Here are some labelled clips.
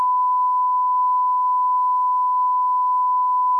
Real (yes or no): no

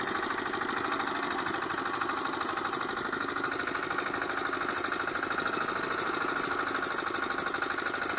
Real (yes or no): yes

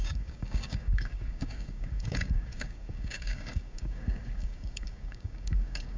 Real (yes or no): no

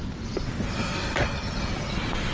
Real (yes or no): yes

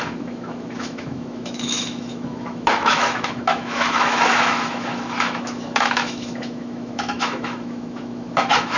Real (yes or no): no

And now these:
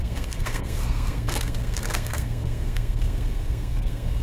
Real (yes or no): no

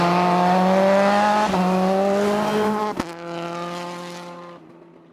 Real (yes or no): yes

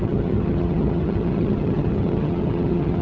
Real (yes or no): no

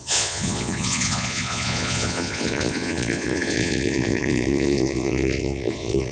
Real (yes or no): no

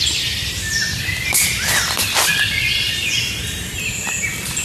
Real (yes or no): yes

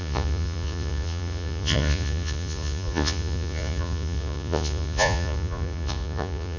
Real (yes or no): no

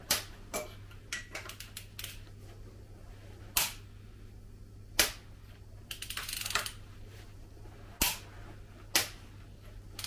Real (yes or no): yes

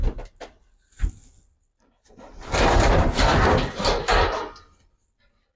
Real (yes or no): yes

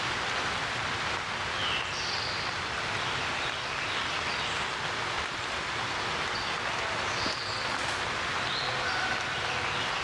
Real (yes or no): yes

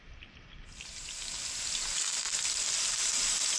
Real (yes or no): yes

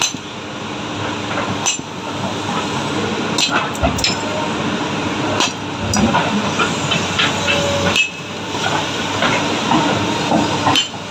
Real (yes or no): yes